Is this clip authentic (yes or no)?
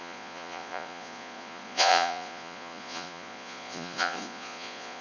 no